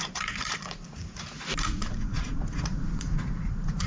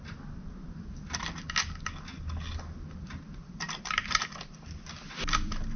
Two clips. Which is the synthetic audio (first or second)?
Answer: first